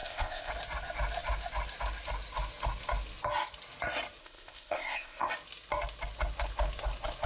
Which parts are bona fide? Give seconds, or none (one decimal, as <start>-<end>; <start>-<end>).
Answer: 0.5-4.2; 5.3-7.3